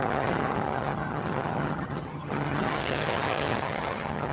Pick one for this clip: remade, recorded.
remade